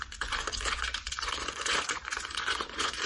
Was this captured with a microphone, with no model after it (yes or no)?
no